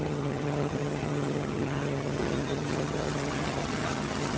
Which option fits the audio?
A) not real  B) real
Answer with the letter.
A